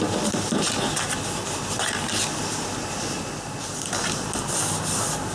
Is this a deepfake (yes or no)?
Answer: no